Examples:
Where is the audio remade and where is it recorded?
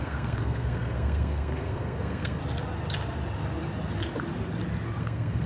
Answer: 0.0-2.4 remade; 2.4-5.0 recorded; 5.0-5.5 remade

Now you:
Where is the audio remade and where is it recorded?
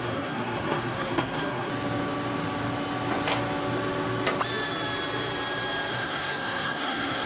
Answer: 0.0-1.7 remade; 1.7-5.9 recorded; 5.9-7.3 remade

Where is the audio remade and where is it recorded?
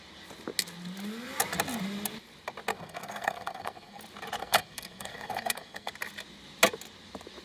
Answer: 0.0-2.7 recorded; 2.7-4.0 remade; 4.0-4.4 recorded; 4.4-5.9 remade; 5.9-7.4 recorded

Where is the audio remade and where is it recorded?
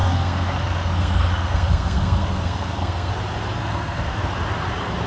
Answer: 0.0-3.1 remade; 3.1-3.6 recorded; 3.6-4.3 remade; 4.3-5.1 recorded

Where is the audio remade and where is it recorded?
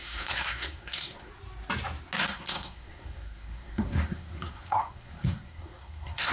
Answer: 0.0-1.3 remade; 1.3-2.2 recorded; 2.2-6.3 remade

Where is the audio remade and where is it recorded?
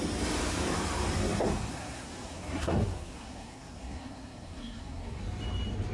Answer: 0.0-1.7 recorded; 1.7-5.2 remade; 5.2-5.9 recorded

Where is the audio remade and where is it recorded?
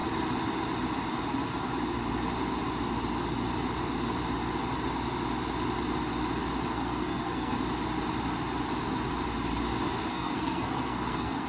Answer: 0.0-6.7 recorded; 6.7-7.6 remade; 7.6-10.1 recorded; 10.1-11.5 remade